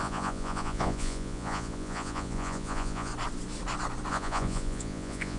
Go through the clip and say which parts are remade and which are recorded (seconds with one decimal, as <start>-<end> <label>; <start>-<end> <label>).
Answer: 0.0-3.1 remade; 3.1-4.1 recorded; 4.1-5.4 remade